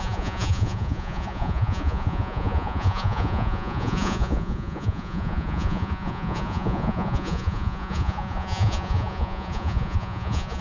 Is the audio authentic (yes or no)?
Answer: no